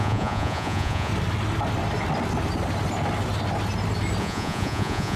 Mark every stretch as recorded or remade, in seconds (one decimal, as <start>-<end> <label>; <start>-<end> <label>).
0.0-1.1 remade; 1.1-4.2 recorded; 4.2-5.2 remade